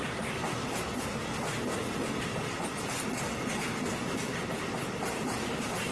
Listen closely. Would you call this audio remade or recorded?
recorded